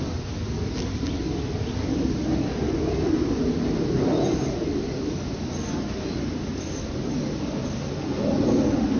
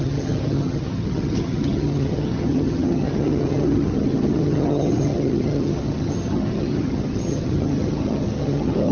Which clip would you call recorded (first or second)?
first